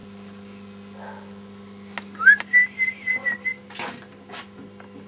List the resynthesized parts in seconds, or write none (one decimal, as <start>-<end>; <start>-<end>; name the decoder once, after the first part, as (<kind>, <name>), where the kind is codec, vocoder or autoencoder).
none